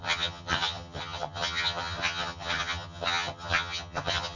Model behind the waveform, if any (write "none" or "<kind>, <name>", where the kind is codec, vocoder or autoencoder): vocoder, HiFi-GAN